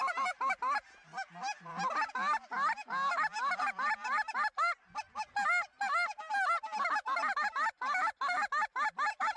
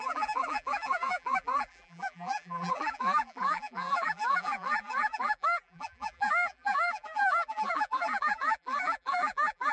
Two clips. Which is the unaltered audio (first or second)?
first